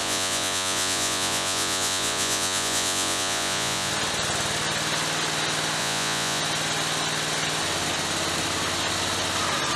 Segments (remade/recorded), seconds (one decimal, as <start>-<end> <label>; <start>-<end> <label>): 0.0-3.9 remade; 3.9-5.8 recorded; 5.8-6.4 remade; 6.4-9.8 recorded